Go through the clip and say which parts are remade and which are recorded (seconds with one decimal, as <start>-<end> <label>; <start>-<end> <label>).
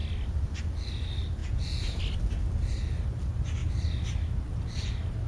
0.0-1.4 recorded; 1.4-2.0 remade; 2.0-5.3 recorded